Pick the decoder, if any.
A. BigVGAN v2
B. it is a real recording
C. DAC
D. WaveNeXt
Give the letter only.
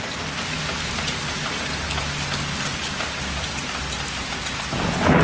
B